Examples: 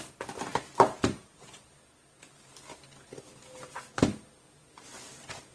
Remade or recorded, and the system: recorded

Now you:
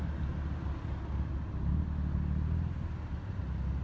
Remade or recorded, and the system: recorded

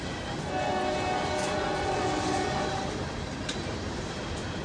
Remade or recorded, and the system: recorded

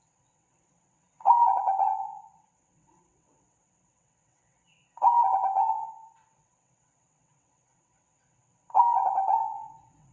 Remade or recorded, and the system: remade, vocoder, WaveNeXt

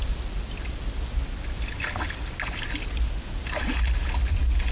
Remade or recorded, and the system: recorded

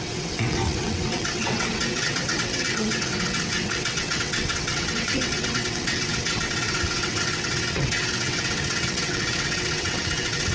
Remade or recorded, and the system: remade, vocoder, WaveNeXt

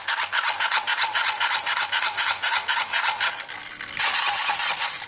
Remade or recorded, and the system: recorded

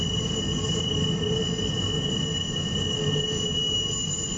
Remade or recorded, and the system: recorded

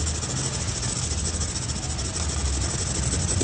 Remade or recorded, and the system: recorded